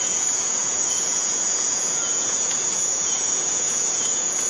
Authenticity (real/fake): fake